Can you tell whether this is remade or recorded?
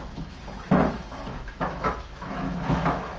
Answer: remade